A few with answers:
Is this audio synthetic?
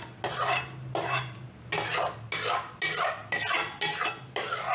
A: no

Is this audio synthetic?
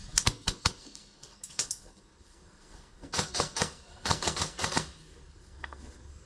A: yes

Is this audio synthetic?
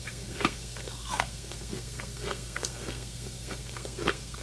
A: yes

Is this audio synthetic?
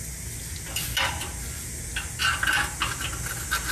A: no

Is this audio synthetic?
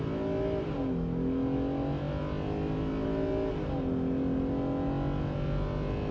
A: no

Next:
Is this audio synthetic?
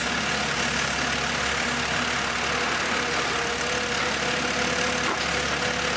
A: no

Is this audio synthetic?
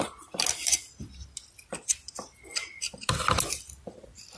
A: no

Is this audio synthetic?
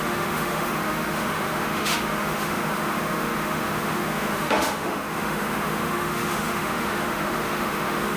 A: yes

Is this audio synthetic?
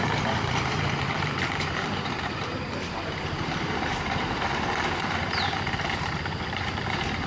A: yes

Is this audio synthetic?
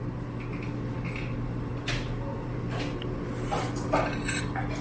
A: no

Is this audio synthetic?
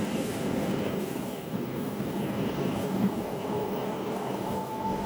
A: yes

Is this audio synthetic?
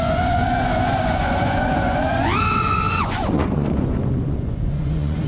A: yes